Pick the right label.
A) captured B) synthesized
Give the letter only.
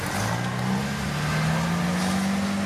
A